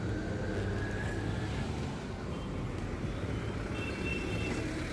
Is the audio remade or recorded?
recorded